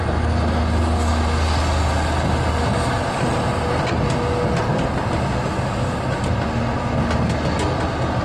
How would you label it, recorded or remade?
recorded